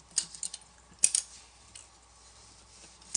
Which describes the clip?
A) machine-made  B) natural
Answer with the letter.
B